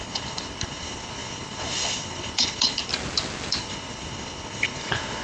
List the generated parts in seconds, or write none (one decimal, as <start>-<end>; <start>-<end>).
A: 0.0-2.9; 3.6-5.2

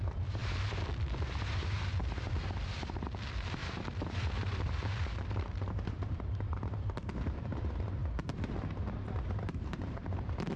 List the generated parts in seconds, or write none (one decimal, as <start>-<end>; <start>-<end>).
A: 0.0-8.0; 8.9-10.6

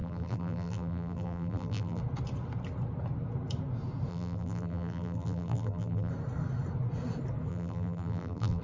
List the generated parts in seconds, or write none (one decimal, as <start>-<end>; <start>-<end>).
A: 0.0-2.0; 4.1-6.1; 7.5-8.6

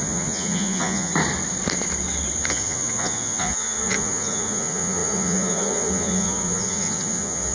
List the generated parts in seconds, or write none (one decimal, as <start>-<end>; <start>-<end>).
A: 0.0-1.1; 2.4-7.5

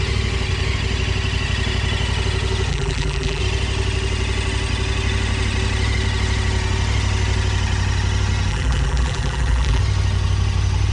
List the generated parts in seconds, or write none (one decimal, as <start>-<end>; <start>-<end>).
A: 2.7-3.4; 8.5-9.8

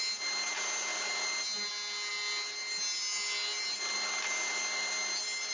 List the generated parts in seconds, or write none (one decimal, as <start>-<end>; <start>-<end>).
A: none

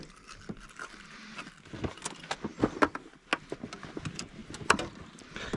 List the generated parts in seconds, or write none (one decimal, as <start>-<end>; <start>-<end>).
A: none